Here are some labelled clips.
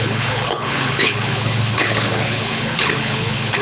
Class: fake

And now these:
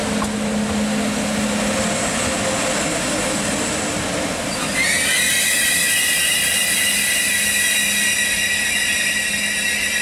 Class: real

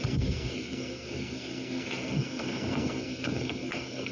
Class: fake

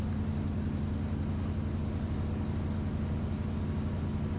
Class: real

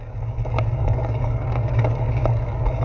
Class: fake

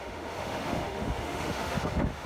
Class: fake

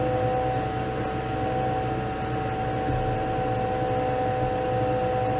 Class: real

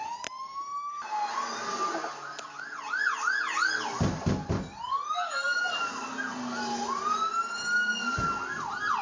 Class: real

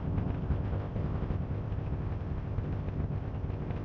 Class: fake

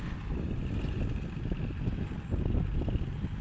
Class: real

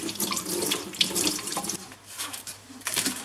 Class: fake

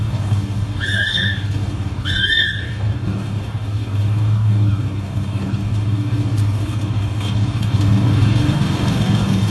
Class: fake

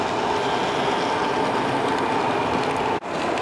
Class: real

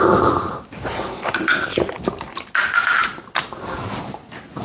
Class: real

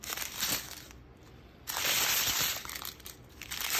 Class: fake